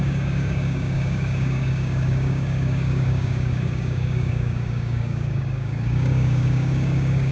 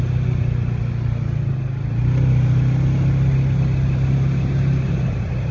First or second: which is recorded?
second